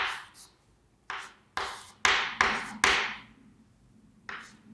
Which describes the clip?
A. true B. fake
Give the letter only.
A